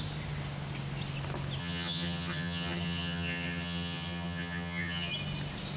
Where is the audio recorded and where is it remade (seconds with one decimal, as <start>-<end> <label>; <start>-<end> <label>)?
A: 0.0-1.6 recorded; 1.6-5.1 remade; 5.1-5.8 recorded